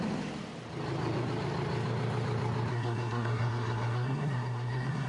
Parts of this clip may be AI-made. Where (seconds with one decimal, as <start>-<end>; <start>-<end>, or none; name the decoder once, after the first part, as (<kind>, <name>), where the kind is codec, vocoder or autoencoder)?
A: 2.7-5.1 (codec, SNAC)